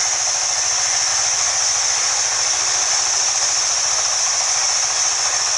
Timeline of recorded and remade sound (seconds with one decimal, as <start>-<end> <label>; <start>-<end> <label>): 0.0-5.6 recorded